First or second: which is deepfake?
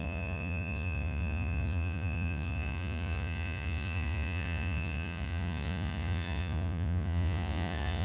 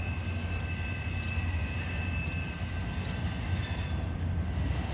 first